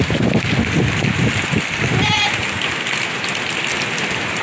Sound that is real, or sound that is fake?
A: real